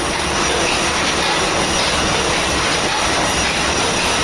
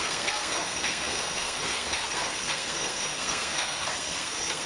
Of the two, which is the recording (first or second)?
first